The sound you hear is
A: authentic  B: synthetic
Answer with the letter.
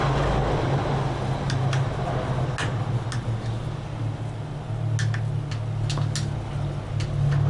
A